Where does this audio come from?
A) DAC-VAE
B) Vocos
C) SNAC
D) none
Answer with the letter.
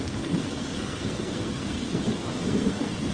C